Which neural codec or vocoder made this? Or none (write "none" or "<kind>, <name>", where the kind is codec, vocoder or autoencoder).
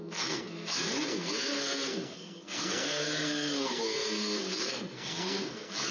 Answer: codec, SNAC